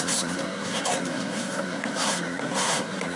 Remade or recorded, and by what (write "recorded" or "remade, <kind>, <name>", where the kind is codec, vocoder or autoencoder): remade, codec, SNAC